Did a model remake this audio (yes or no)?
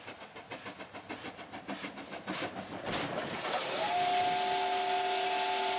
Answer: no